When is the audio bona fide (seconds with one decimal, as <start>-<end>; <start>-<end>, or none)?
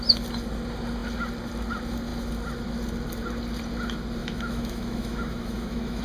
0.0-4.2